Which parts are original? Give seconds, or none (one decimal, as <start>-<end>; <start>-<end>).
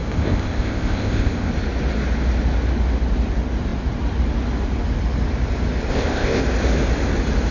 1.5-5.9; 6.4-7.5